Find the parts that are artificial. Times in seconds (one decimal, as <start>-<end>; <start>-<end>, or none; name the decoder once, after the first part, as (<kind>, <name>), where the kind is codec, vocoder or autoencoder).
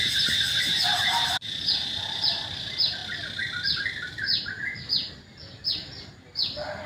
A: none